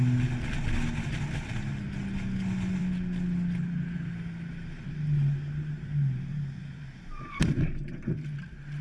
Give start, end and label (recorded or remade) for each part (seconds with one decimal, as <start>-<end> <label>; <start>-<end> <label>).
0.0-8.8 recorded